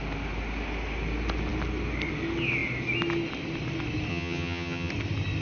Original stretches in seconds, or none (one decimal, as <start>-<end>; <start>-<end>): 0.0-4.1; 4.9-5.4